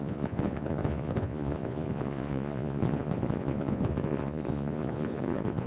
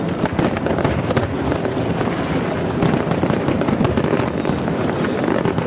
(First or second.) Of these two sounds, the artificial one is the first